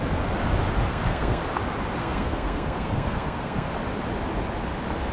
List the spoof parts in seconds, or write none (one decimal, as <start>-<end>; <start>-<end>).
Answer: 0.9-1.4; 2.0-3.7